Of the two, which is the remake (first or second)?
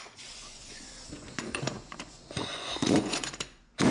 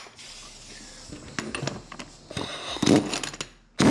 first